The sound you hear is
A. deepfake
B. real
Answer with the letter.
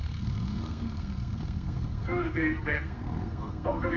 A